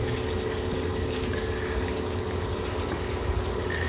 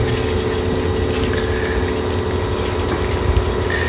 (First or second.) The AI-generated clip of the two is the first